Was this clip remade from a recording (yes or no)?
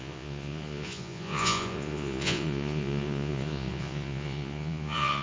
yes